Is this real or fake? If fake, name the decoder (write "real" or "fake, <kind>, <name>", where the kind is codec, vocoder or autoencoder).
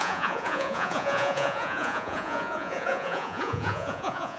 fake, vocoder, Vocos